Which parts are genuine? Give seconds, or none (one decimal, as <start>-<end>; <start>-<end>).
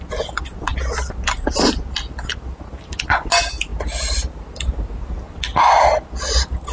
0.0-6.7